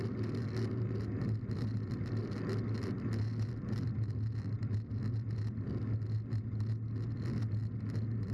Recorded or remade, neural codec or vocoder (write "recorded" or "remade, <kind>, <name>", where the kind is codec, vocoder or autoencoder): recorded